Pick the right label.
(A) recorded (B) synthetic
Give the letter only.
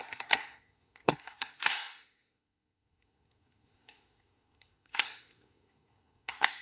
B